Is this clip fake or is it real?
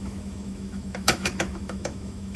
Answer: fake